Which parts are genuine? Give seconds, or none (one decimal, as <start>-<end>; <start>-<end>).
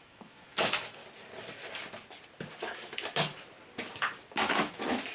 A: 1.0-2.5; 3.3-4.5